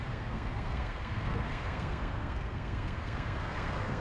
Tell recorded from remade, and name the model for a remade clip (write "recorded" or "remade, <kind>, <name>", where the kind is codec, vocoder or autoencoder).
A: remade, codec, SNAC